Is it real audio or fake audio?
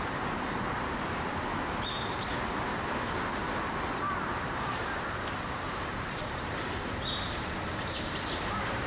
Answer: fake